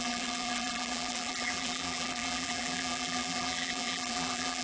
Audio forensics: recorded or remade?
remade